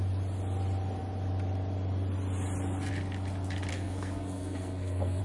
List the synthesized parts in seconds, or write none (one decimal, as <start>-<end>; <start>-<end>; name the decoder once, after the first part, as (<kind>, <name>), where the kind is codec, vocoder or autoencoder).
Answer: 3.7-5.2 (codec, SNAC)